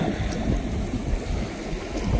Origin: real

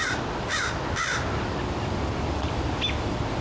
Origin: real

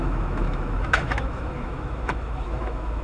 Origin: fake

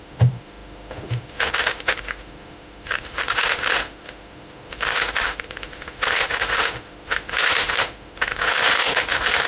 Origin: fake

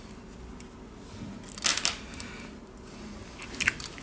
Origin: real